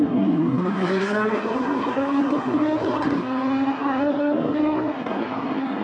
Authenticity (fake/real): fake